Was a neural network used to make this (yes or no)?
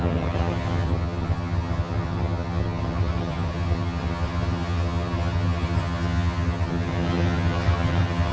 yes